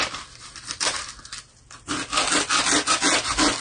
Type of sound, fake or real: real